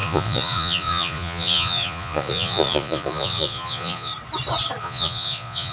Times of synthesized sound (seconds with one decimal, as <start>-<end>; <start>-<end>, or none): 0.0-4.1; 4.8-5.7